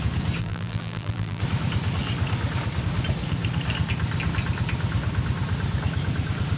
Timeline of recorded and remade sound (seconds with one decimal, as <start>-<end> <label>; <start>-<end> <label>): 0.0-0.4 recorded; 0.4-1.4 remade; 1.4-6.6 recorded